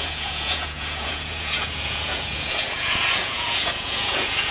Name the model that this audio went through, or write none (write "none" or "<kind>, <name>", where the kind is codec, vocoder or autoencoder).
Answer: vocoder, Vocos